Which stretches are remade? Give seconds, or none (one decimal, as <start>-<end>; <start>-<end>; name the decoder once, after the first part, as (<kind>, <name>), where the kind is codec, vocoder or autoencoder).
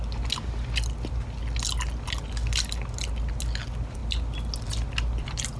none